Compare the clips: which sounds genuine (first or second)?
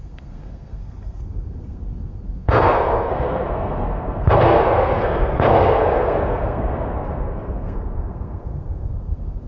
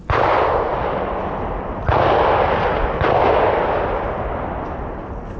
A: second